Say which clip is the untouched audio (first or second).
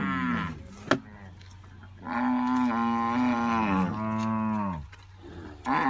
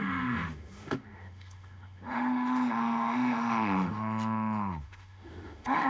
first